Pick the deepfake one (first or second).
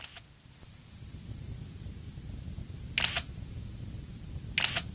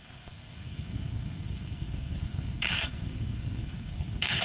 second